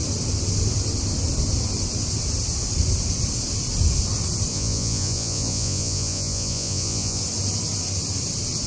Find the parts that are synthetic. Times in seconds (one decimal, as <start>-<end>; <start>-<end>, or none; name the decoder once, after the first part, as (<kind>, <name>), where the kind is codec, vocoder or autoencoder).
4.5-7.2 (vocoder, Vocos)